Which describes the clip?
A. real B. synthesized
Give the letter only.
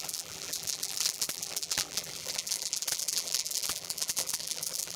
B